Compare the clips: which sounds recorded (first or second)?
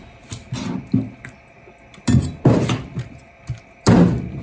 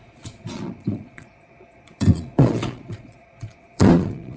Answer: first